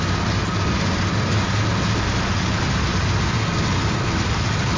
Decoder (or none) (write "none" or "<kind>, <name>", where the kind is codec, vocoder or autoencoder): none